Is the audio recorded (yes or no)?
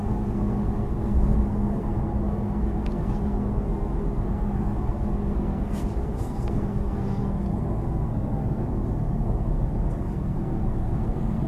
no